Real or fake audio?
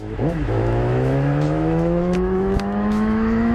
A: fake